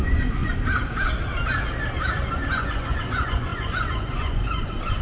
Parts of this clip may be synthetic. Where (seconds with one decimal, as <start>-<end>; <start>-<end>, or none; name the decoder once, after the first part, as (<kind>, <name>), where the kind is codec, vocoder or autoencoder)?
0.0-0.4 (vocoder, Vocos); 2.5-5.0